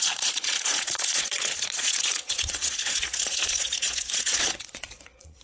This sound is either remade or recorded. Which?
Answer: remade